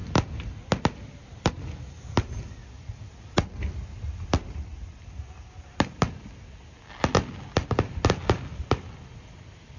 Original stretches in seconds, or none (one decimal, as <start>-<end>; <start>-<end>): 0.0-9.8